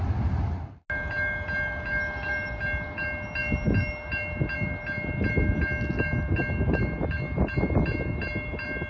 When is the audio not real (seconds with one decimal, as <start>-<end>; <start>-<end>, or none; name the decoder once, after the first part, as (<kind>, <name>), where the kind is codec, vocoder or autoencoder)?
none